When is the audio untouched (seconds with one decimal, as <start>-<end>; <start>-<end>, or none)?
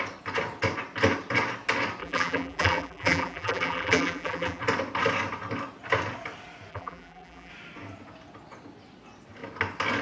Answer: 0.0-2.0; 4.6-6.7; 7.5-10.0